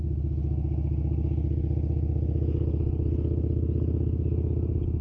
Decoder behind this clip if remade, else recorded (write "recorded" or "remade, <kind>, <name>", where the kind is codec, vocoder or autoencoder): recorded